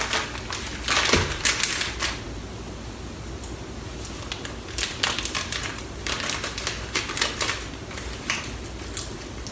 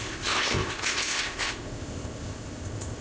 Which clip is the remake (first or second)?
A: second